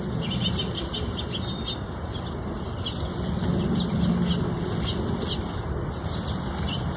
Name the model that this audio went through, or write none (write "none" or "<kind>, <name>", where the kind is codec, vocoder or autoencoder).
none